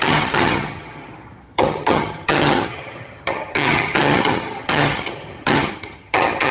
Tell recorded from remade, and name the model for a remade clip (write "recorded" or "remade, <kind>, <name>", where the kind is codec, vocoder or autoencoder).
remade, vocoder, HiFi-GAN